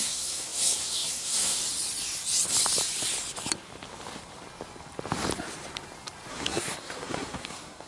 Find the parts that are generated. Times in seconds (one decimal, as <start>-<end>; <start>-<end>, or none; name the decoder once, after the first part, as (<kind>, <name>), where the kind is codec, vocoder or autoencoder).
0.0-1.6 (codec, SNAC); 6.3-7.9